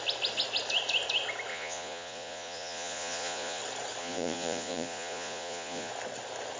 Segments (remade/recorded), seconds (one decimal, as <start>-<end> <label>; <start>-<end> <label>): 0.0-1.5 recorded; 1.5-3.6 remade; 3.6-4.0 recorded; 4.0-5.9 remade; 5.9-6.6 recorded